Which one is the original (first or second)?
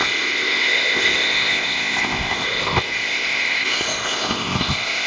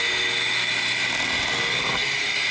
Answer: second